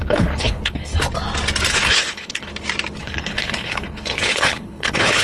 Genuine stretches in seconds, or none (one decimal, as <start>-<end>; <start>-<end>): 0.9-1.7; 2.5-3.0